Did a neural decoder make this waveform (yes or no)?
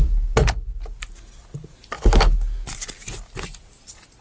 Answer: no